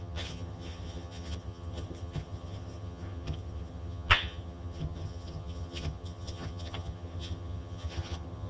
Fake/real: fake